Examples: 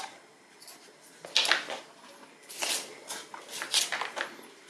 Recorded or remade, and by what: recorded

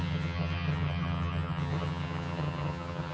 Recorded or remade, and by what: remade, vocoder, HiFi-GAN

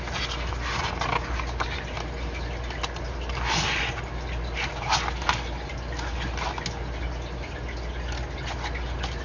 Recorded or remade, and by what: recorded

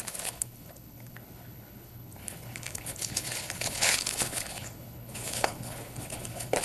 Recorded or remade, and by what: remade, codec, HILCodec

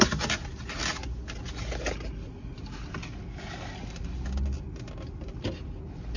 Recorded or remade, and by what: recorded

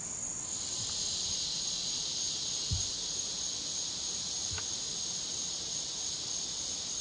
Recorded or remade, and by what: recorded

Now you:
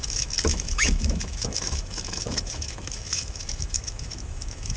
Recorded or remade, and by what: remade, autoencoder, DAC-VAE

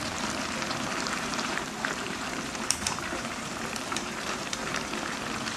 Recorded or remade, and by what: remade, vocoder, BigVGAN v2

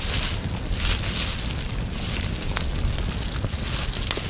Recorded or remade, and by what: recorded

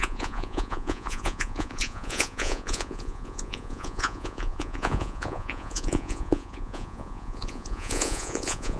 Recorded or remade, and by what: remade, vocoder, Vocos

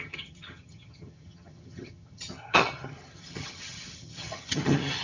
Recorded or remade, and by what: remade, vocoder, HiFi-GAN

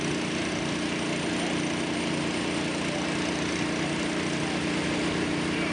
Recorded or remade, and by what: recorded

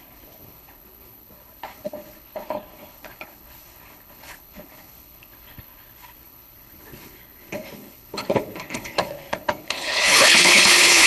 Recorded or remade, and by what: remade, codec, HILCodec